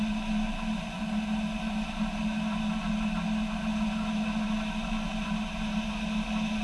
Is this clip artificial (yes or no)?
no